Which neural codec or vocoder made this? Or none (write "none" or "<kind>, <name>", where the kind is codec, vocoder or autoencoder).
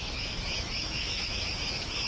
autoencoder, DAC-VAE